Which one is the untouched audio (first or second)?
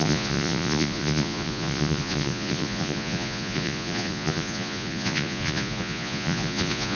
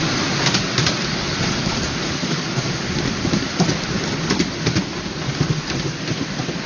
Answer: second